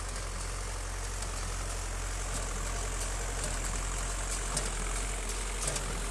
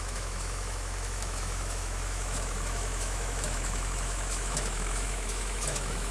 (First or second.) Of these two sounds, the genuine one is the first